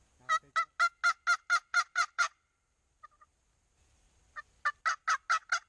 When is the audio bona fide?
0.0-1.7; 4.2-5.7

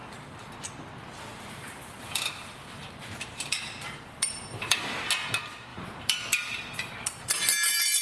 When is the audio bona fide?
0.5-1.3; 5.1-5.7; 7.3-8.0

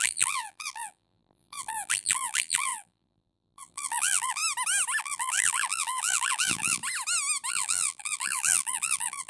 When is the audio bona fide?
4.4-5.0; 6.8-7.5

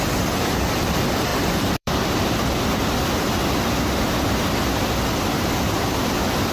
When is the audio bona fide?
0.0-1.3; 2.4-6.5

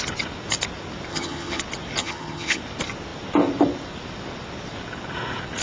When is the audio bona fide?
0.0-1.1; 1.6-2.0; 2.6-5.6

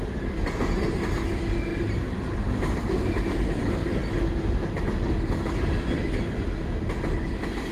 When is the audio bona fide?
0.0-1.7; 2.9-3.8; 4.8-7.7